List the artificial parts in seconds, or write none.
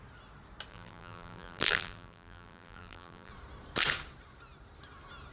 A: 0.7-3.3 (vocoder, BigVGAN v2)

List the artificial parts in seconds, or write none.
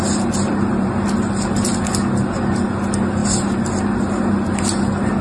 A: 0.0-0.9 (vocoder, BigVGAN v2); 3.2-4.0